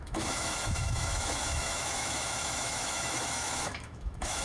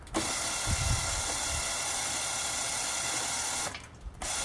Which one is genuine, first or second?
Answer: second